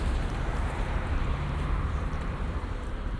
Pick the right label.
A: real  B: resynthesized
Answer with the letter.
B